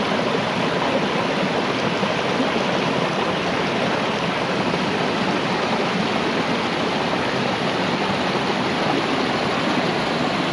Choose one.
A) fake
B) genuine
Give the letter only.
B